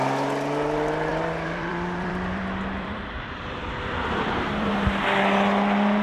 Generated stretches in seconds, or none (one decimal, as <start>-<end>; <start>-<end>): 1.1-4.7